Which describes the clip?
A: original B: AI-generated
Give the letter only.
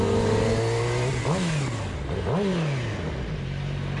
A